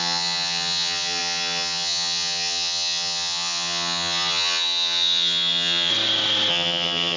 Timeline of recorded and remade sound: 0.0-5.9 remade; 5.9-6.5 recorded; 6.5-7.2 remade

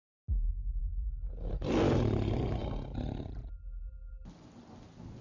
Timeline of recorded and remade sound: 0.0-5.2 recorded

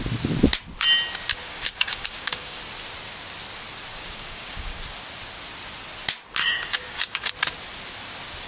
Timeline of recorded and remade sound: 0.0-1.4 recorded; 1.4-2.6 remade; 2.6-3.9 recorded; 3.9-4.8 remade; 4.8-6.4 recorded; 6.4-7.3 remade; 7.3-8.5 recorded